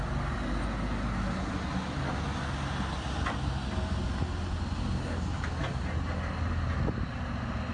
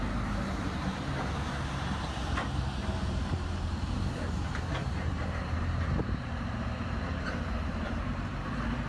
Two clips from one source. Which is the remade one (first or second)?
second